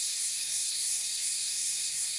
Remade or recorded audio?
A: remade